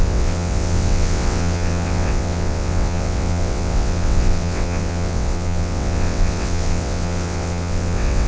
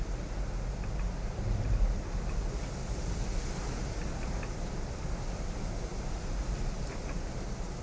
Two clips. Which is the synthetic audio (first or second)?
first